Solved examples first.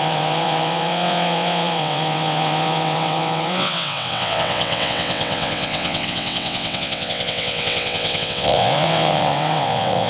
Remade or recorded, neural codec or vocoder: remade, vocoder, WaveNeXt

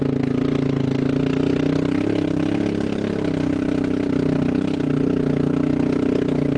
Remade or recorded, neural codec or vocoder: recorded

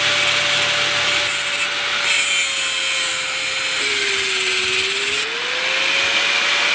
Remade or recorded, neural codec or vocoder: recorded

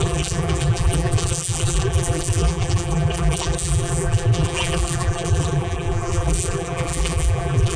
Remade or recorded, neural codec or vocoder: remade, vocoder, BigVGAN v2